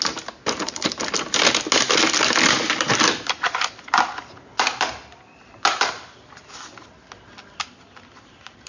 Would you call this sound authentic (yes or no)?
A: yes